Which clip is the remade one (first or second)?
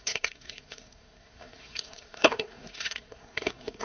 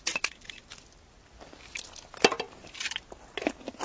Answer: first